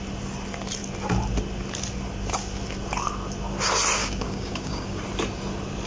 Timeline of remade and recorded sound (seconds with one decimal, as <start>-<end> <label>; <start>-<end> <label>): 0.0-4.0 recorded; 4.0-5.0 remade; 5.0-5.9 recorded